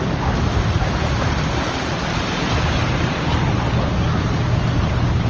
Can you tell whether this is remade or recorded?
recorded